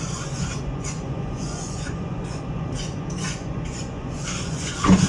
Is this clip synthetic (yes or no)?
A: yes